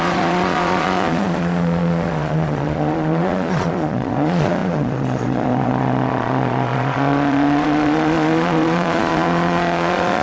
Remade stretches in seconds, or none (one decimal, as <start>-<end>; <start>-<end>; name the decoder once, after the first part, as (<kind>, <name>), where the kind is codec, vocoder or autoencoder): 0.0-10.2 (vocoder, Vocos)